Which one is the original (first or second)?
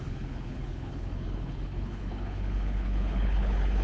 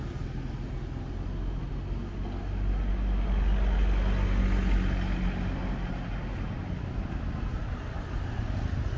second